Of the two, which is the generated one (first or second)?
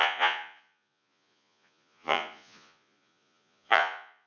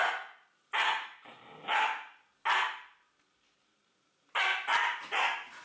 first